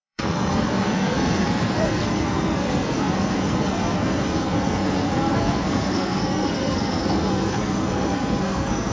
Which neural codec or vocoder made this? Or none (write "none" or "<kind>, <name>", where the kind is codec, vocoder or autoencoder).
codec, SNAC